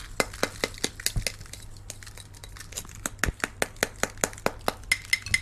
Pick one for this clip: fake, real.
real